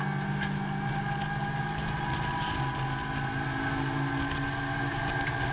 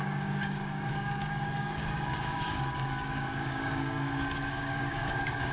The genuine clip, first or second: first